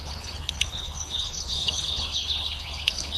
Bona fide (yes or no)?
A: no